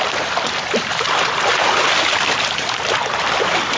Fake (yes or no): no